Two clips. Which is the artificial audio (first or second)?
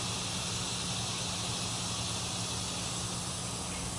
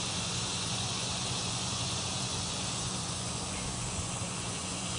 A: second